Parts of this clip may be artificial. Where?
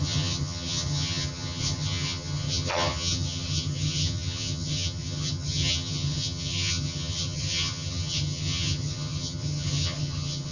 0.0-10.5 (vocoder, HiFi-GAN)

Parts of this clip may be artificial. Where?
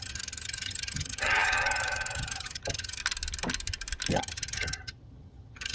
0.0-3.0 (vocoder, HiFi-GAN); 4.1-5.7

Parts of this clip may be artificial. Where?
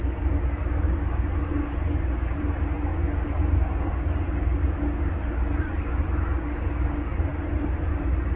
none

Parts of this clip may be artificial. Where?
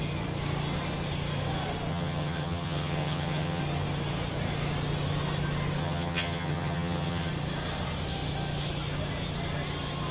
1.9-3.6 (vocoder, HiFi-GAN); 5.8-7.3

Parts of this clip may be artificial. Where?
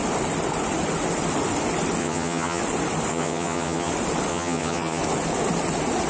2.0-2.6 (vocoder, HiFi-GAN); 3.1-3.9; 4.3-5.0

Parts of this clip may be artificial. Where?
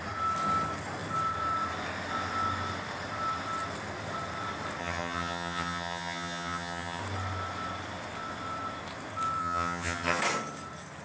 4.8-7.0 (vocoder, HiFi-GAN); 9.4-10.2